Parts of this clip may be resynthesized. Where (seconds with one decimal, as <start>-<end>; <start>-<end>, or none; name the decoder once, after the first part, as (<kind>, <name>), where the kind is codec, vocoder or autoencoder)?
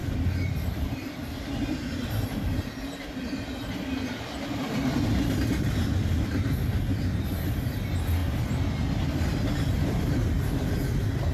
0.0-2.1 (vocoder, BigVGAN v2)